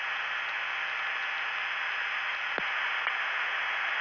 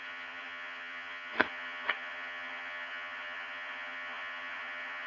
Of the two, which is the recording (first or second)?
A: first